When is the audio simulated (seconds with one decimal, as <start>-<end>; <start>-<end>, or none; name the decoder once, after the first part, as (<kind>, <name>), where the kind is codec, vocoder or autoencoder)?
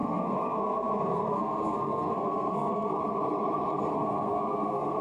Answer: 0.0-3.0 (codec, SNAC); 3.9-5.0